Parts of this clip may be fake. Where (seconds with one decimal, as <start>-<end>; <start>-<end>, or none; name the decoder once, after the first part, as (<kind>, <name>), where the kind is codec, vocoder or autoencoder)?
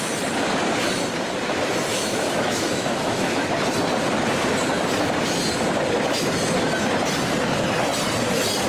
1.9-3.5 (autoencoder, DAC-VAE)